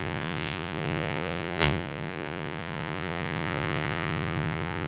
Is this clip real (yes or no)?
no